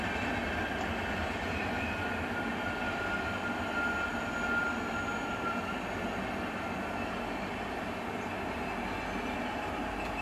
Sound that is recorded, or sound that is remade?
recorded